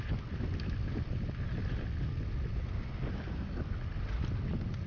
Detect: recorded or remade recorded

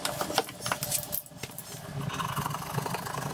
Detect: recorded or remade recorded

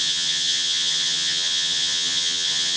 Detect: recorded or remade remade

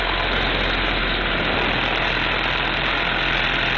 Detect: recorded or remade recorded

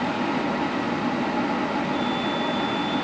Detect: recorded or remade recorded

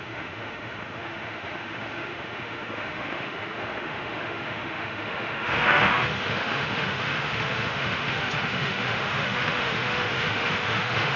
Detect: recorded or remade remade